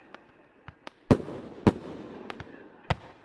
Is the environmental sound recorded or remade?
recorded